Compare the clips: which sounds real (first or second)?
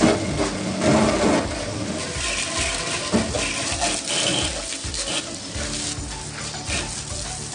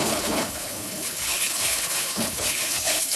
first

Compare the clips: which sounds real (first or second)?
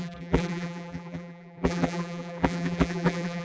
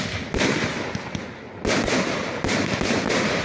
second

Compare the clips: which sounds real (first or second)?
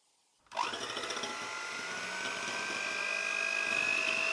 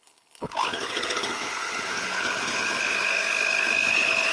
first